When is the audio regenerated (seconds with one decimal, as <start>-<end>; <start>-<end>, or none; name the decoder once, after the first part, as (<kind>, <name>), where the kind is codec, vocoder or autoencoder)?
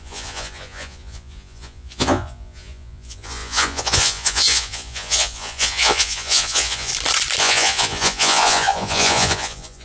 0.0-6.9 (vocoder, Vocos); 7.4-9.8